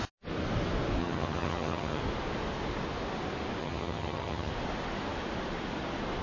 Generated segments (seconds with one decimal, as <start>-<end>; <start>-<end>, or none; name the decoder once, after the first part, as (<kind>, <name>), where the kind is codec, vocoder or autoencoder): 1.0-2.0 (vocoder, HiFi-GAN); 3.6-4.5